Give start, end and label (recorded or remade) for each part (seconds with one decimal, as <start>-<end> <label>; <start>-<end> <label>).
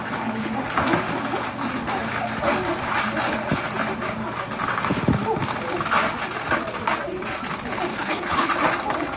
0.0-7.9 recorded; 7.9-8.5 remade; 8.5-9.2 recorded